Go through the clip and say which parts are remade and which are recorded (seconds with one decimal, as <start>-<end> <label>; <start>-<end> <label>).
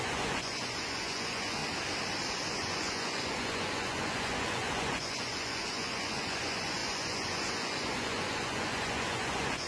0.0-1.6 remade; 1.6-2.5 recorded; 2.5-9.7 remade